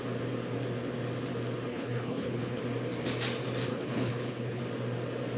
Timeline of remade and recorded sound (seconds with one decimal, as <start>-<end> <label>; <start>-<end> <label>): 0.0-1.7 recorded; 1.7-2.6 remade; 2.6-3.7 recorded; 3.7-4.6 remade; 4.6-5.4 recorded